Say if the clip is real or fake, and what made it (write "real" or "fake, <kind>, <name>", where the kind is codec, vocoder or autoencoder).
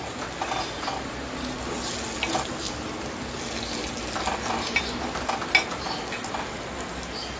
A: real